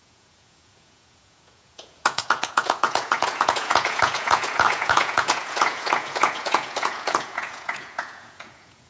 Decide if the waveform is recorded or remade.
remade